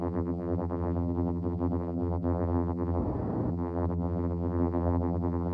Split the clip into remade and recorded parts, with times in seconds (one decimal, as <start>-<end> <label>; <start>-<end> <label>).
0.0-3.0 remade; 3.0-3.5 recorded; 3.5-5.5 remade